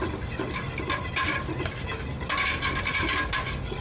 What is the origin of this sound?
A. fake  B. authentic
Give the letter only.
B